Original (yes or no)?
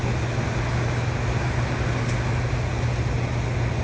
yes